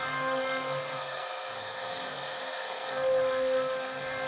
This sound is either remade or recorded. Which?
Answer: remade